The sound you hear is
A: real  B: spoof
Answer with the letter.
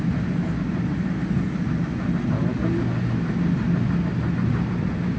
A